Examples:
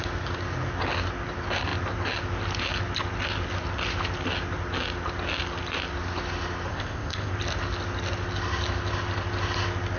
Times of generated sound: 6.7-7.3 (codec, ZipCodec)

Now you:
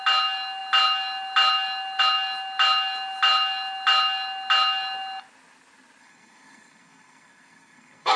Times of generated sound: 6.0-8.2 (codec, SNAC)

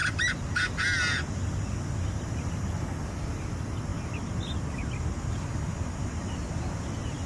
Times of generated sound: none

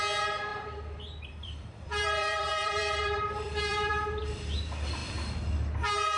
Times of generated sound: 0.5-4.2 (vocoder, BigVGAN v2)

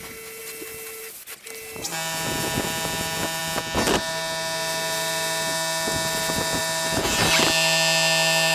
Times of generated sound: none

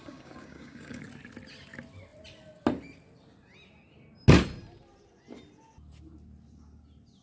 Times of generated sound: 0.0-1.0 (codec, DAC)

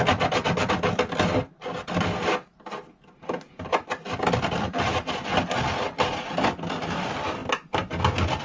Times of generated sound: none